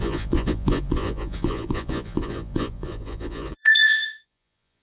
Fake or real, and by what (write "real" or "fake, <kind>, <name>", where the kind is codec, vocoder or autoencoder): fake, vocoder, Vocos